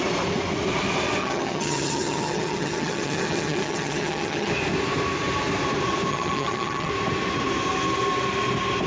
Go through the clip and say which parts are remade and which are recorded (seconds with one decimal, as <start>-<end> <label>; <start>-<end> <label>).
0.0-1.2 recorded; 1.2-4.5 remade; 4.5-6.1 recorded; 6.1-6.9 remade; 6.9-8.9 recorded